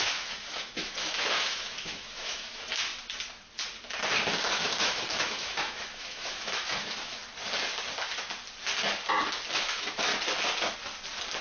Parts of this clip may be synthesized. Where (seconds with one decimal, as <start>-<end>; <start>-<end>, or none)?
0.0-2.9; 4.5-7.2; 9.5-10.1